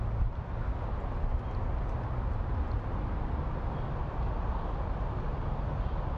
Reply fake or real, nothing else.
real